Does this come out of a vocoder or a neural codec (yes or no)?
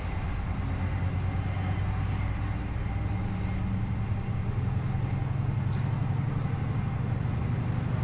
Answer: no